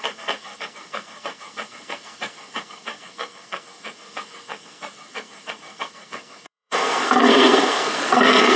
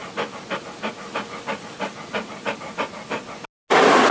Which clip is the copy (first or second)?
first